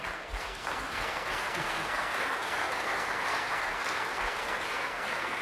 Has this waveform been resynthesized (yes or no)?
yes